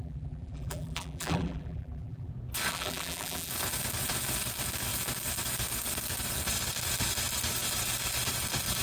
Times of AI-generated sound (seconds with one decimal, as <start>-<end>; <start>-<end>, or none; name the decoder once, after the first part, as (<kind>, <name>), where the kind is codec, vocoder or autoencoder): 0.0-2.3 (vocoder, BigVGAN v2); 2.7-3.5